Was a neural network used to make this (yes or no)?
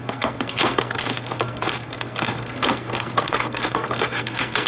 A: yes